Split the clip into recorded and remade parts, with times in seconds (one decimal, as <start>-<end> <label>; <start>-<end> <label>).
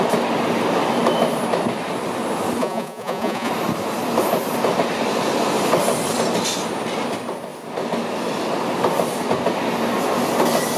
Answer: 0.0-2.6 recorded; 2.6-3.5 remade; 3.5-10.8 recorded